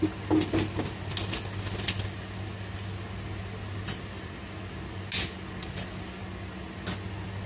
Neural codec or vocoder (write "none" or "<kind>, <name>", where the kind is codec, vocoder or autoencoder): none